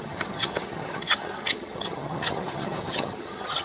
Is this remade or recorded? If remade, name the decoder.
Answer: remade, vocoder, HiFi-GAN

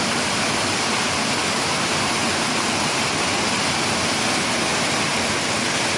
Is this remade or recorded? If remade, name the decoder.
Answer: recorded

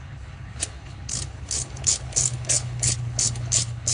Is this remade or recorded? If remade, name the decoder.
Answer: remade, codec, HILCodec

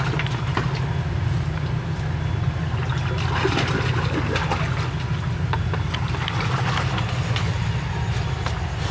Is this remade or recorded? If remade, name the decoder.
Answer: recorded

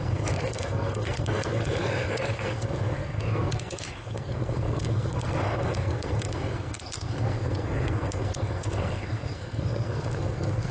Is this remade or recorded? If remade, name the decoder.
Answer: remade, codec, SNAC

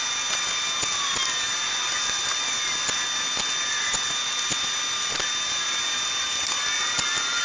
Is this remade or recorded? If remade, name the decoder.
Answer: recorded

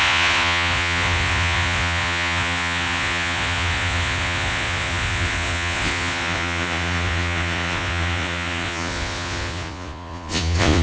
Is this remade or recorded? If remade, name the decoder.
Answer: remade, vocoder, Vocos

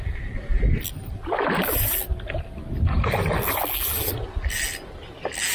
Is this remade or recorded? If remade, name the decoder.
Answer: recorded